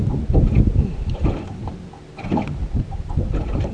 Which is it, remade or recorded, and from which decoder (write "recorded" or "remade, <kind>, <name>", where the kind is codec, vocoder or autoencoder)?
recorded